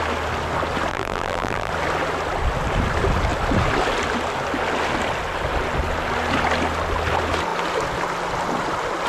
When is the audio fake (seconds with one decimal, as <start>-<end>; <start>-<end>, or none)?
0.9-1.7